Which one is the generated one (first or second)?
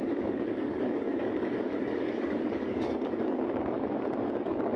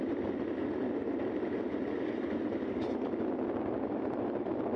first